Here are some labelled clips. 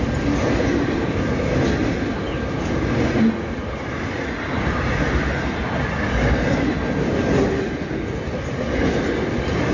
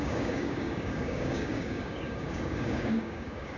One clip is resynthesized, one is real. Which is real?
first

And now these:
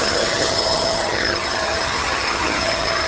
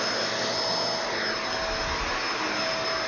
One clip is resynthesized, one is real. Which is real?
second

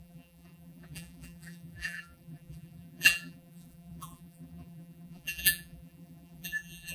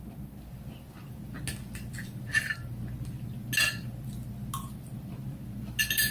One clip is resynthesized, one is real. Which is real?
second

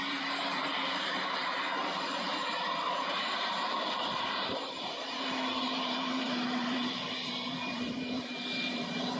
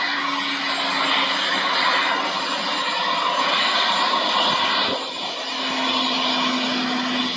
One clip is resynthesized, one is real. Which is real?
second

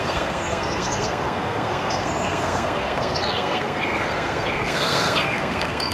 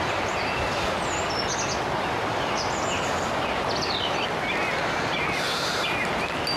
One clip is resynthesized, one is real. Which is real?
second